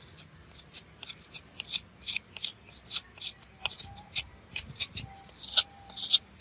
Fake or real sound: real